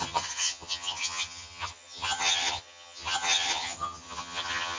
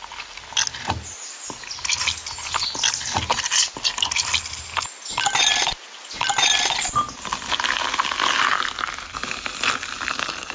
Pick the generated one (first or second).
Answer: first